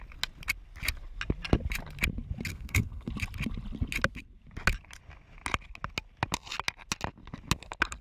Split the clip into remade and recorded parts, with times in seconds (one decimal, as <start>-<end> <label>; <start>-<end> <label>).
0.0-2.5 recorded; 2.5-3.1 remade; 3.1-8.0 recorded